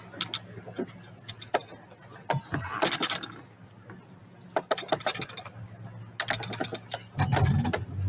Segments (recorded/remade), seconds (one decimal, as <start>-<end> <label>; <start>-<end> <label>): 0.0-8.1 recorded